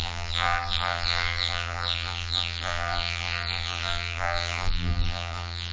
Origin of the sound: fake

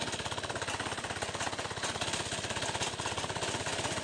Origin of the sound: fake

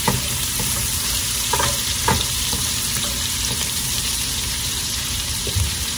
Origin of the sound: fake